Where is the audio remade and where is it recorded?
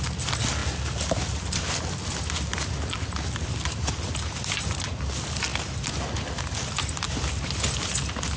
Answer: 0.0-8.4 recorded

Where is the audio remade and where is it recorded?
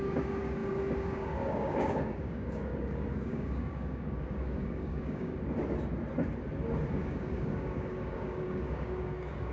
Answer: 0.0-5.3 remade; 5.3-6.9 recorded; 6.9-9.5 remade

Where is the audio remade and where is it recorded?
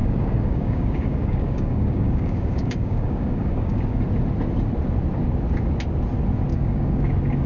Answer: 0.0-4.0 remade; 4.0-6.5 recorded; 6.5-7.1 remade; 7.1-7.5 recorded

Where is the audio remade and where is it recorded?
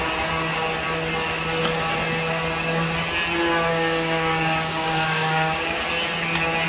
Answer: 0.0-3.7 recorded; 3.7-5.8 remade; 5.8-6.7 recorded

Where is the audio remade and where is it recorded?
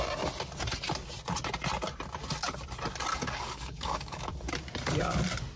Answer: 0.0-3.1 recorded; 3.1-4.3 remade; 4.3-5.6 recorded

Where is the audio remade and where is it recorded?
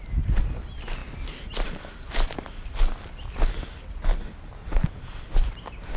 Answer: 0.0-6.0 recorded